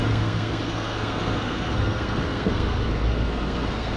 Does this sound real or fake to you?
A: fake